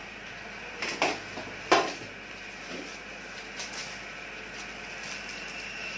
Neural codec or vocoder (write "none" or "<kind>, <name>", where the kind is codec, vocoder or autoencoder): none